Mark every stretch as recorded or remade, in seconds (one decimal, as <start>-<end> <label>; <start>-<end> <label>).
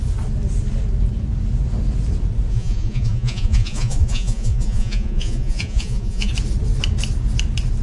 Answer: 0.0-2.5 recorded; 2.5-6.3 remade; 6.3-7.8 recorded